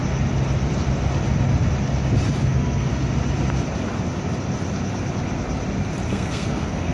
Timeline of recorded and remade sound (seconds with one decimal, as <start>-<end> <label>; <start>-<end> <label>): 0.0-2.4 recorded; 2.4-2.9 remade; 2.9-6.1 recorded; 6.1-6.9 remade